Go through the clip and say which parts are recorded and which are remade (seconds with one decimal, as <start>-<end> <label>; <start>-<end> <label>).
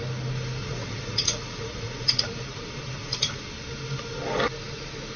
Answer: 0.0-0.6 recorded; 0.6-2.2 remade; 2.2-3.0 recorded; 3.0-3.5 remade; 3.5-5.2 recorded